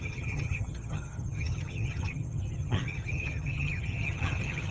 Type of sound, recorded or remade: remade